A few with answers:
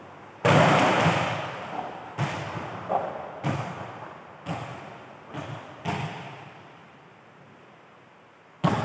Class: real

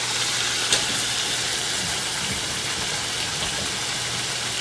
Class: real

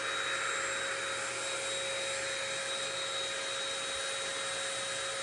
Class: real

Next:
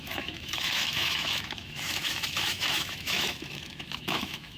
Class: fake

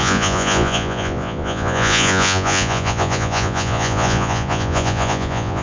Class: fake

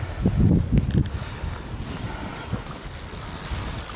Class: real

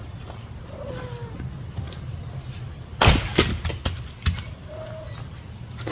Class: real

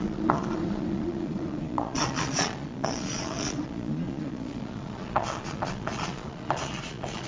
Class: fake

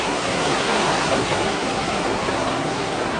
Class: fake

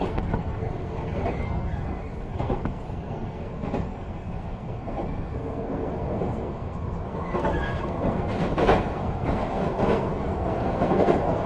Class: fake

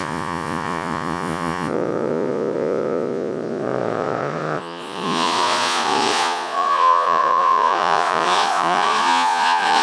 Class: fake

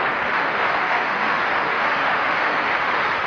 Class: fake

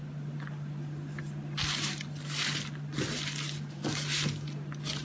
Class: real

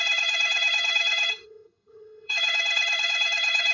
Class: fake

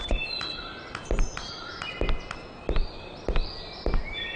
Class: real